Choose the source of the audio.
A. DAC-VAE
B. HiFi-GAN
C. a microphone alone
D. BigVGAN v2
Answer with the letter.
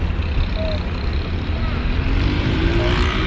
C